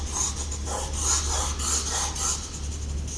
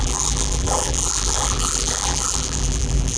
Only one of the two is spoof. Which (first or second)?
second